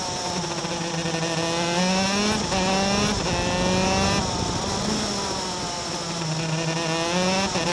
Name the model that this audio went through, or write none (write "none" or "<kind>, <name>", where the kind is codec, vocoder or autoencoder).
none